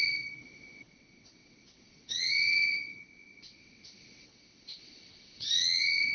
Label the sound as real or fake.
fake